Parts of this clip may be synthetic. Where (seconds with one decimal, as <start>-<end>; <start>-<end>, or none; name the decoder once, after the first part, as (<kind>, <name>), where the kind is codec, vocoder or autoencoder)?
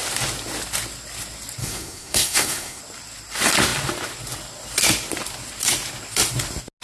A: 1.6-2.8 (codec, SNAC)